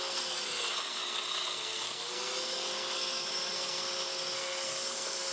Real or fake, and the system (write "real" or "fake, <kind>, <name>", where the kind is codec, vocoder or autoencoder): fake, codec, SNAC